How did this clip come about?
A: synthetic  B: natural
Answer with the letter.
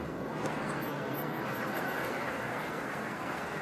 A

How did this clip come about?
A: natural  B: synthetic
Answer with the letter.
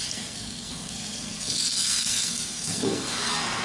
B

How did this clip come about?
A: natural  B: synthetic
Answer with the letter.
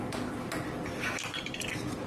A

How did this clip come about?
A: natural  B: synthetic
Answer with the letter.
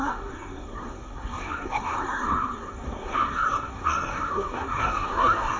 B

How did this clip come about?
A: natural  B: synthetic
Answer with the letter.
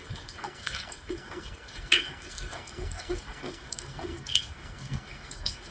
B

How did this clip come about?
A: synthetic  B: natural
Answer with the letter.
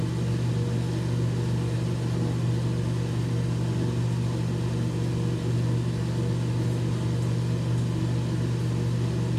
B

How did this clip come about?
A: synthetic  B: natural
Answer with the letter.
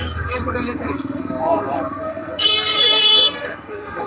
A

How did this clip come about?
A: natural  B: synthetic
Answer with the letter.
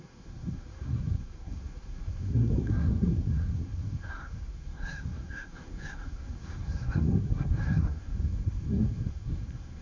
B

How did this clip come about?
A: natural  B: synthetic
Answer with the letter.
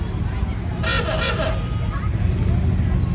A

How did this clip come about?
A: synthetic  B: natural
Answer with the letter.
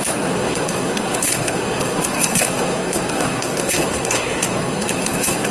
A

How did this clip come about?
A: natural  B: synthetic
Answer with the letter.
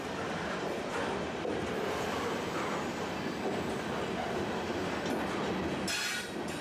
A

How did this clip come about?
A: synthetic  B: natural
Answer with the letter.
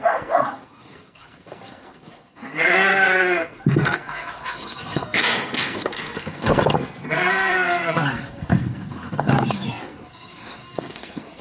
A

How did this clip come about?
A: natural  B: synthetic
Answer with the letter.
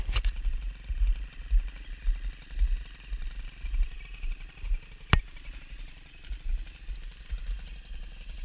A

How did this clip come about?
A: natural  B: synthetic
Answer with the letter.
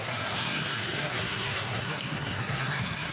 B